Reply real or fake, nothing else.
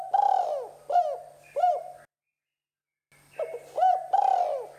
real